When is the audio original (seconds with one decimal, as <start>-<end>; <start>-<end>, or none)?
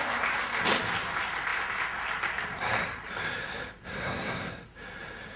0.0-3.9; 4.5-5.4